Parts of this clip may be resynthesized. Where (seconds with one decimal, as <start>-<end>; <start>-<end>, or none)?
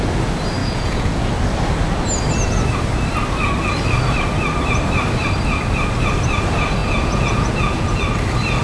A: 0.6-1.3; 6.8-8.0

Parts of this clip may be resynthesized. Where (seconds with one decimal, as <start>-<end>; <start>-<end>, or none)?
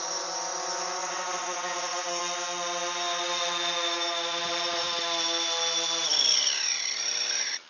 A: 1.0-2.2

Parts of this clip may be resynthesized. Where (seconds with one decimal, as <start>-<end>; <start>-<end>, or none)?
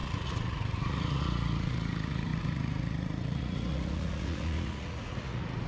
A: 0.0-5.7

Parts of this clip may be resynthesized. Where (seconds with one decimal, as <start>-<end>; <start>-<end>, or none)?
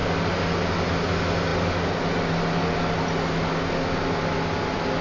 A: none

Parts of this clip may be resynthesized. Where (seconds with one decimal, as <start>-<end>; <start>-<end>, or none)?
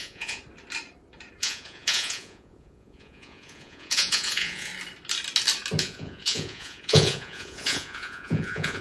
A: 0.0-0.4; 1.4-4.7; 5.8-8.8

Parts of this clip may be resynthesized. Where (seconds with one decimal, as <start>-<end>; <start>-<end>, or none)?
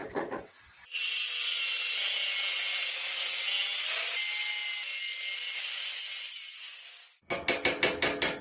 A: 0.0-1.1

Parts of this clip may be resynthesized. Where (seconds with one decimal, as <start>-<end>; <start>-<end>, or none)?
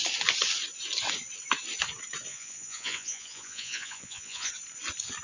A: 2.3-4.5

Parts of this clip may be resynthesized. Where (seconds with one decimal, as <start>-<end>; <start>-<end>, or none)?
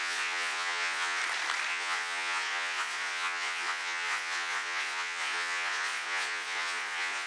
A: 0.0-1.2; 1.7-7.3